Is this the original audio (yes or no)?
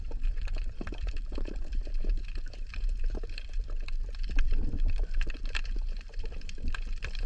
no